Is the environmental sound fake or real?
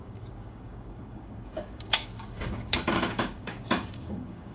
fake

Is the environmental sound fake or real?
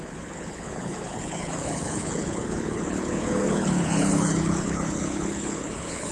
fake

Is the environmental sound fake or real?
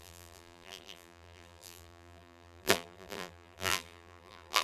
fake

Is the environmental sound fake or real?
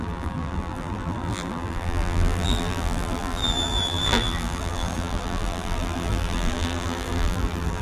fake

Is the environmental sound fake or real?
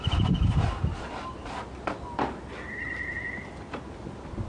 real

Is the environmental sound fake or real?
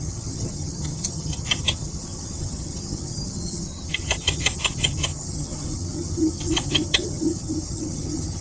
fake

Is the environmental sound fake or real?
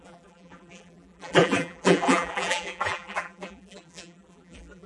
fake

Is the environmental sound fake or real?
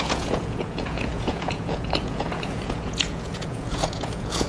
fake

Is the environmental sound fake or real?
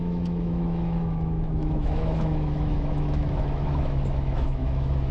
fake